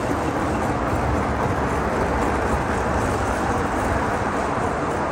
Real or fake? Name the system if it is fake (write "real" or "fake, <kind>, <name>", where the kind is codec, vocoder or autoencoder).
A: real